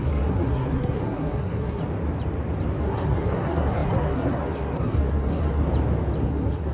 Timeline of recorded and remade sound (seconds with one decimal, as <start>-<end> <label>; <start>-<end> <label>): 0.0-1.8 remade; 1.8-2.8 recorded; 2.8-5.6 remade; 5.6-6.2 recorded; 6.2-6.7 remade